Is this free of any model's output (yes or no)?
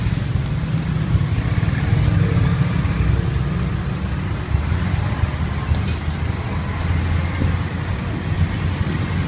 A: yes